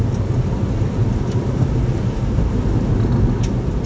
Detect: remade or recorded recorded